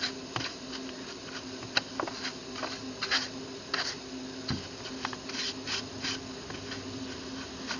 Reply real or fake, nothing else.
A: real